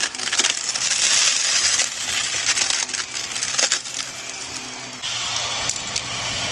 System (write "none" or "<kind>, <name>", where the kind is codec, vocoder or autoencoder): none